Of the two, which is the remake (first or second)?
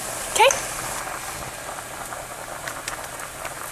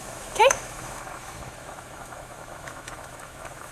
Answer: second